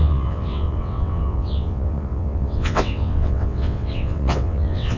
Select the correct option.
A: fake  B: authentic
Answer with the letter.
A